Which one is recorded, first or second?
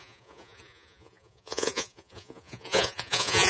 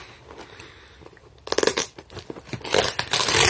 second